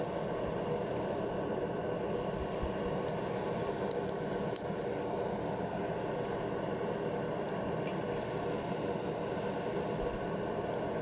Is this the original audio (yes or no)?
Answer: yes